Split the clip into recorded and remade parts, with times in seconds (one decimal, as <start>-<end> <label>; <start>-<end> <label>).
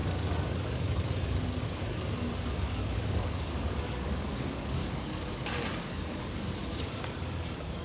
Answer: 0.0-7.8 remade